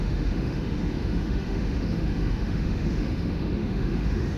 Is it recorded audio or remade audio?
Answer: remade